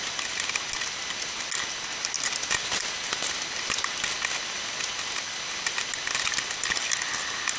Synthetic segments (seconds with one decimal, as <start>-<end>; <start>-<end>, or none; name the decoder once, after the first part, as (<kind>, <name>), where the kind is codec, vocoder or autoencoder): none